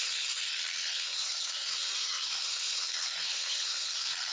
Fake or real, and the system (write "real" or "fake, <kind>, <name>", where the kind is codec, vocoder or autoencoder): fake, codec, SNAC